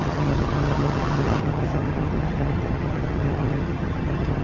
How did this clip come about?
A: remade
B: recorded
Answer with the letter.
A